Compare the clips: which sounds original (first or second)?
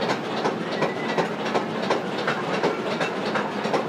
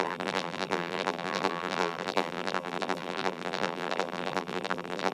first